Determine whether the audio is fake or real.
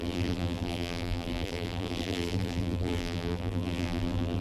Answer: fake